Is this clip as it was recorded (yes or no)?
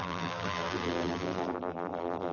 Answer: no